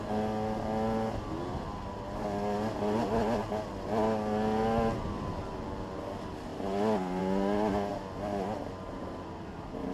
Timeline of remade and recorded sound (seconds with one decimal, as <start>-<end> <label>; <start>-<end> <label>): 0.0-9.9 recorded